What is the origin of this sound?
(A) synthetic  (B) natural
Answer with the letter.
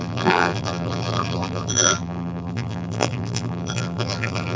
A